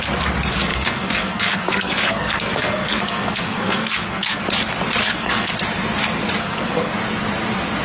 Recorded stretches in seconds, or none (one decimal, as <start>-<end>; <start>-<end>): 0.0-0.7; 4.4-5.0; 5.5-6.4; 6.9-7.8